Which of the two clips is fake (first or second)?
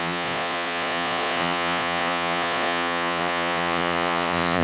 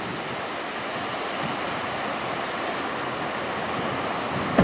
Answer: first